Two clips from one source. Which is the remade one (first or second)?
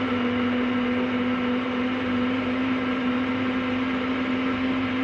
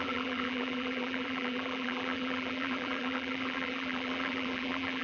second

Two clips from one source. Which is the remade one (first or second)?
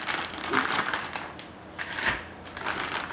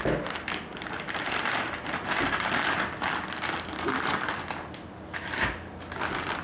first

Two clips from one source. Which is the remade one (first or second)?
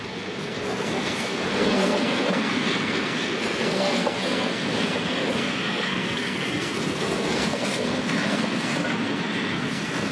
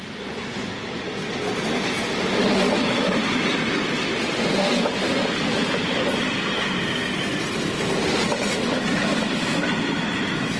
first